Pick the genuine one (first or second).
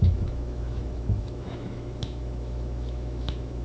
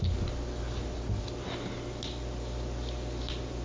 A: second